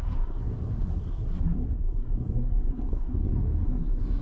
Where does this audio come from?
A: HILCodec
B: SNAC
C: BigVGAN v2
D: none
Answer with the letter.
B